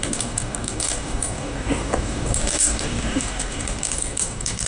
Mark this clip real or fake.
fake